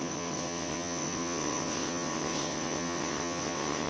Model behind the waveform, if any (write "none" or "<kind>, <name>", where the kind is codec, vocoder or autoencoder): vocoder, WaveNeXt